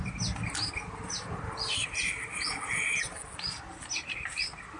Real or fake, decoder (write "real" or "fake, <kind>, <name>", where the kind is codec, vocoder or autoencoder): real